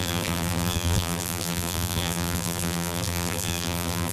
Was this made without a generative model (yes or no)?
no